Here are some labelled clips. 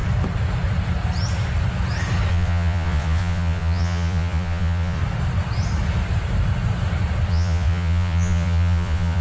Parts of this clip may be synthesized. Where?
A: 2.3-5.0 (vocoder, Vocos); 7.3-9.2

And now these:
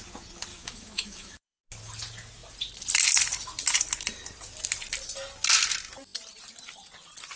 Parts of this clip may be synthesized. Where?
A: 0.5-1.6 (autoencoder, DAC-VAE)